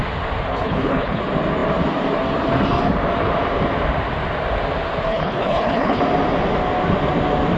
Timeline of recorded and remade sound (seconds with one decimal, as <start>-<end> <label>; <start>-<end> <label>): 0.0-0.5 recorded; 0.5-1.2 remade; 1.2-5.1 recorded; 5.1-6.0 remade; 6.0-7.6 recorded